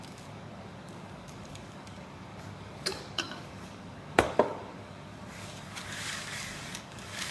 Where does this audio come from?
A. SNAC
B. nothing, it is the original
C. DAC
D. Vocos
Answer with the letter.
C